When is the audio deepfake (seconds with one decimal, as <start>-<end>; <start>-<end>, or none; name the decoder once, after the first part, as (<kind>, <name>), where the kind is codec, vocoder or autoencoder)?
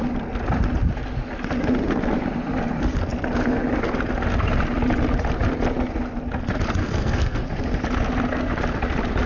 6.8-7.4 (codec, SNAC)